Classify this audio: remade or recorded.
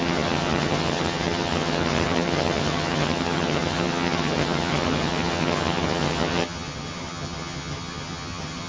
remade